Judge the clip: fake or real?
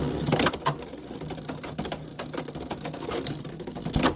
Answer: real